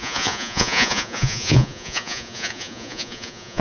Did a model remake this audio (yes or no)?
yes